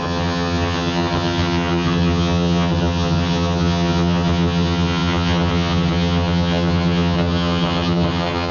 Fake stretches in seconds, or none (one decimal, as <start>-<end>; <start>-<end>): 0.0-8.5